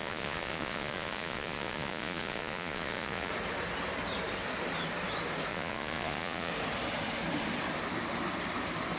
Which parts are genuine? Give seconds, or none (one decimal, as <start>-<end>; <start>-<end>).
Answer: 3.3-5.5; 6.5-9.0